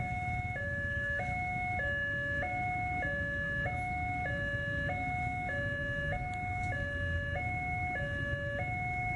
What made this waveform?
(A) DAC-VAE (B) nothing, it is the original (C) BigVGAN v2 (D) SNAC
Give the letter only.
B